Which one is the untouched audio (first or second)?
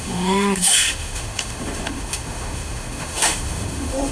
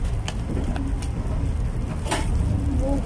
second